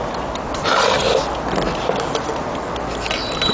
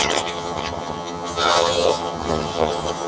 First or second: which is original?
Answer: first